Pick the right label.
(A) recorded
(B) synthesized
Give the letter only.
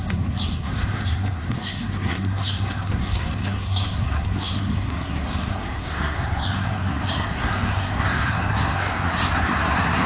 B